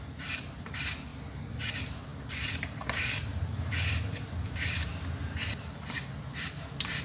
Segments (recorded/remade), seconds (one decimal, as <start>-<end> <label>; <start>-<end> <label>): 0.0-1.1 remade; 1.1-1.6 recorded; 1.6-4.9 remade; 4.9-6.2 recorded; 6.2-7.0 remade